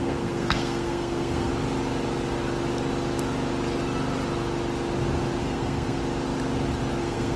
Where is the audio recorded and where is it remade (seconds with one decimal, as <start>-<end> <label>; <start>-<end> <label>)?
0.0-1.5 remade; 1.5-5.4 recorded; 5.4-6.0 remade; 6.0-7.0 recorded; 7.0-7.4 remade